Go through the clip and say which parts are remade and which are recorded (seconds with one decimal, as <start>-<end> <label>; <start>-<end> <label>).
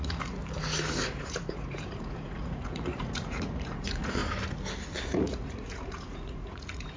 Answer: 0.0-0.4 remade; 0.4-0.9 recorded; 0.9-4.2 remade; 4.2-5.0 recorded; 5.0-7.0 remade